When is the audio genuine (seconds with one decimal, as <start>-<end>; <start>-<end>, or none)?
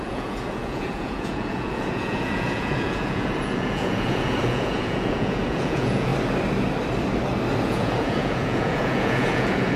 6.1-7.6